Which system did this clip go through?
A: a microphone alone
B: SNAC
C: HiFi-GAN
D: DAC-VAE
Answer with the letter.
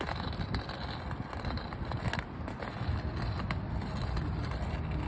A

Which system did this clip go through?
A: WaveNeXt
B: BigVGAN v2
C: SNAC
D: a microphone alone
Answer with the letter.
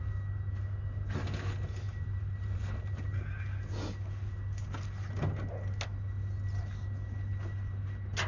D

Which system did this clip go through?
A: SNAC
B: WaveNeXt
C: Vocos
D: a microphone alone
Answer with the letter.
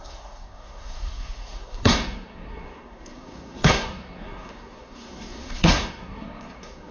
A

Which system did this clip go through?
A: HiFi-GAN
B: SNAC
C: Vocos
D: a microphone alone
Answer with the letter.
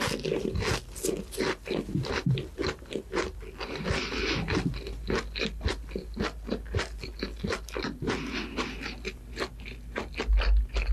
D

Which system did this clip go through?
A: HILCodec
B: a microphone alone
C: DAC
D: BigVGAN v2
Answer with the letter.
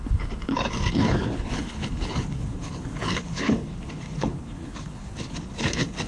A